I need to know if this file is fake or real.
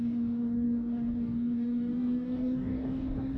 fake